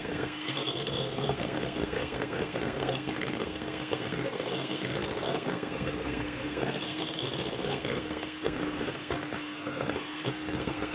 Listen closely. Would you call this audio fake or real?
fake